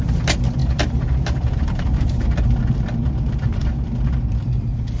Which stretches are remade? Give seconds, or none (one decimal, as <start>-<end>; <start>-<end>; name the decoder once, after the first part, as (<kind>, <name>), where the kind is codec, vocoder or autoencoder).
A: none